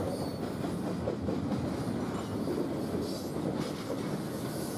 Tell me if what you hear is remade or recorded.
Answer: recorded